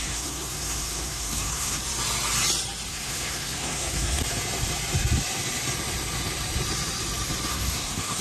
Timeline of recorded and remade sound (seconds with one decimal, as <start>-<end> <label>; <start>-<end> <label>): 0.0-1.8 remade; 1.8-2.9 recorded; 2.9-4.2 remade; 4.2-7.5 recorded; 7.5-8.2 remade